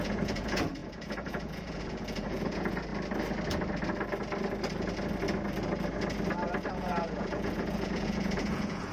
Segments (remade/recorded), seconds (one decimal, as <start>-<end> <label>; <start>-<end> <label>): 0.0-2.9 remade; 2.9-6.7 recorded; 6.7-8.9 remade